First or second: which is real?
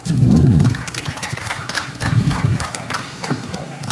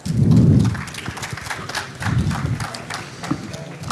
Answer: second